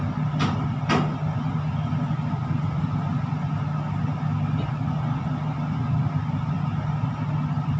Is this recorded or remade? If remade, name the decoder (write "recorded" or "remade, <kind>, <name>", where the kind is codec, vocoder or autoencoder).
recorded